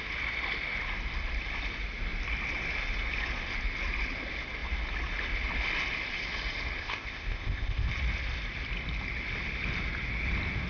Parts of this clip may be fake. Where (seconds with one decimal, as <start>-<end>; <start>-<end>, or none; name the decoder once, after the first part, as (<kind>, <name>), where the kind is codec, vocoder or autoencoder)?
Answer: 6.8-7.9 (codec, ZipCodec)